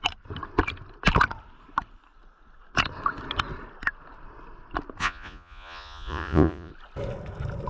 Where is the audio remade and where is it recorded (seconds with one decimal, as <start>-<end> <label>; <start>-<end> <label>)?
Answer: 0.0-5.0 recorded; 5.0-6.7 remade; 6.7-7.7 recorded